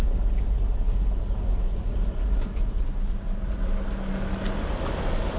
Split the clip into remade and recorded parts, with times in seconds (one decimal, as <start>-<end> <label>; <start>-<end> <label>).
0.0-5.4 recorded